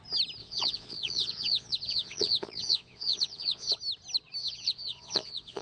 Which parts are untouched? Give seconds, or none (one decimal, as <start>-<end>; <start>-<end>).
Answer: 0.0-0.4; 3.8-4.4